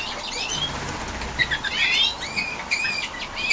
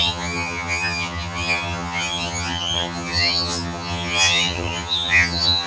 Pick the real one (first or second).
first